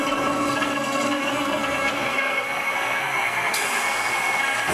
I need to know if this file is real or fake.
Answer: fake